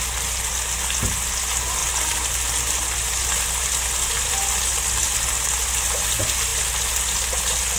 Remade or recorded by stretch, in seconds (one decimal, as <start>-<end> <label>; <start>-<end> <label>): 0.0-7.8 recorded